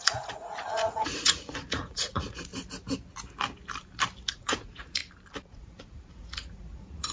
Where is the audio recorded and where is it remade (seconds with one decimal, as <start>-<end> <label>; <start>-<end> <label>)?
0.0-2.5 remade; 2.5-4.3 recorded; 4.3-5.0 remade; 5.0-5.5 recorded; 5.5-7.1 remade